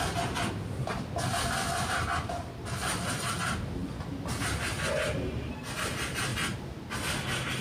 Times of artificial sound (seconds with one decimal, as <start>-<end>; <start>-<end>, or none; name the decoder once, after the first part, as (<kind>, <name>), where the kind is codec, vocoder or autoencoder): none